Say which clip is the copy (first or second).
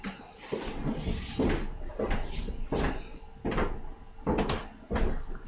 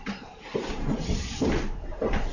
second